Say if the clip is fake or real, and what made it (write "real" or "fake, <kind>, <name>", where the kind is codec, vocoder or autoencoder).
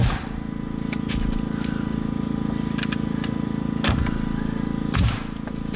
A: real